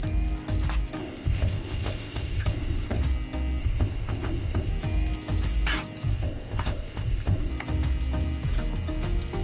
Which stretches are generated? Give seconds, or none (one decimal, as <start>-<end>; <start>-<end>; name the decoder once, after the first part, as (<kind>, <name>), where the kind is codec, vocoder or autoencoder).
1.0-3.0 (codec, ZipCodec); 3.6-4.7; 6.1-7.5